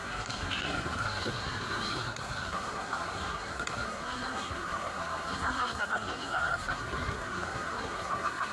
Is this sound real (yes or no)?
no